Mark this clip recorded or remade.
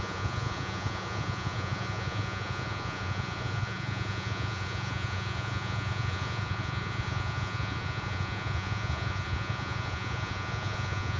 remade